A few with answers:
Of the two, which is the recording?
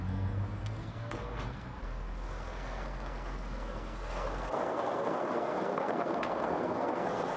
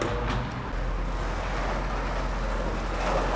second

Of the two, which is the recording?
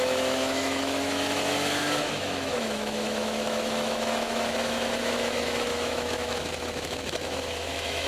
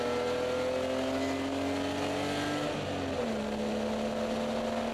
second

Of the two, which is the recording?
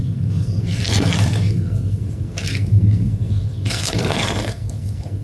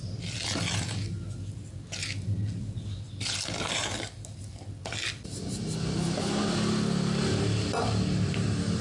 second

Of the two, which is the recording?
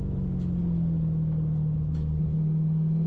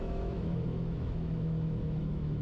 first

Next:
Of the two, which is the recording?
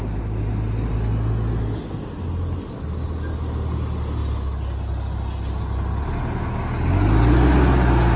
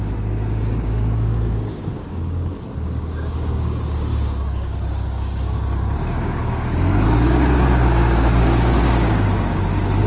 first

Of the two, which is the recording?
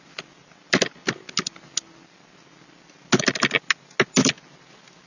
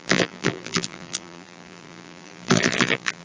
first